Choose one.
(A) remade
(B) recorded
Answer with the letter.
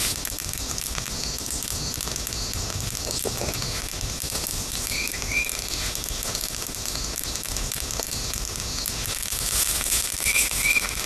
A